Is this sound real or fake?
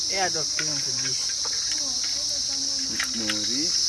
real